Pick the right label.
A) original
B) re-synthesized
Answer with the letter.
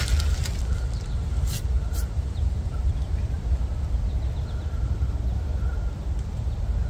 A